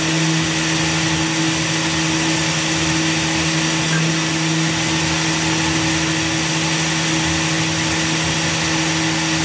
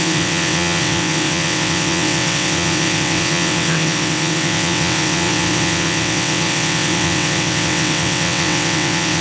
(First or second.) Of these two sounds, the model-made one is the second